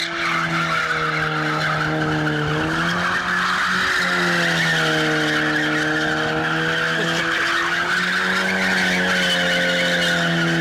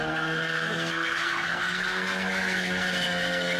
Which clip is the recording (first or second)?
first